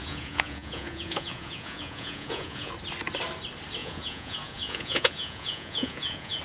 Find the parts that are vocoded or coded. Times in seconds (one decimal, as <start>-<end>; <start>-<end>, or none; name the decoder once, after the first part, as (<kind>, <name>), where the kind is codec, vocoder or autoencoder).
0.0-2.7 (vocoder, Vocos); 3.8-6.4